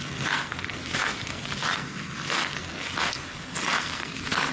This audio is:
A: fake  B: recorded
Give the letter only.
A